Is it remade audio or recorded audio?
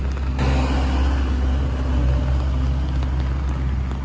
recorded